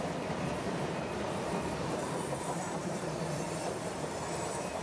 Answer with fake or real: fake